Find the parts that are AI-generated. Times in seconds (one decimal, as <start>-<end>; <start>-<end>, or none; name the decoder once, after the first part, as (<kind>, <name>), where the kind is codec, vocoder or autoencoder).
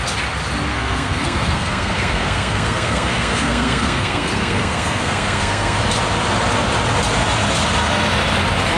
0.7-5.8 (codec, SNAC)